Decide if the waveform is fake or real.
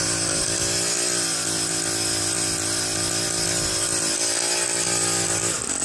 real